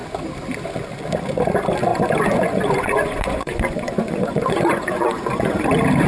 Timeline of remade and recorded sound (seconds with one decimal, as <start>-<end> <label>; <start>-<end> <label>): 0.0-1.9 recorded; 1.9-5.6 remade; 5.6-6.1 recorded